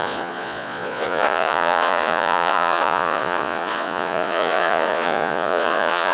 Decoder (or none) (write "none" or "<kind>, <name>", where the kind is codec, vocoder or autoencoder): vocoder, Vocos